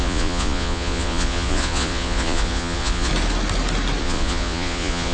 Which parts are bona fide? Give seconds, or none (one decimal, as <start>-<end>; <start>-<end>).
3.1-4.0